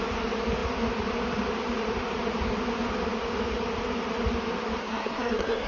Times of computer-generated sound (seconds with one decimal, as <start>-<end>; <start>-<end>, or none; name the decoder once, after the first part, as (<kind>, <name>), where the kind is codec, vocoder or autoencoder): 4.8-5.7 (codec, SNAC)